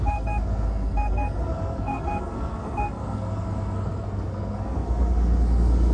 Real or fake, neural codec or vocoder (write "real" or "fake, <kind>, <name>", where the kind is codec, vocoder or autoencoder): fake, codec, SNAC